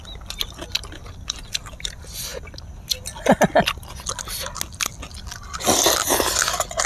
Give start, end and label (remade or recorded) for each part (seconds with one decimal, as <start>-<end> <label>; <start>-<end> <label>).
0.0-6.9 recorded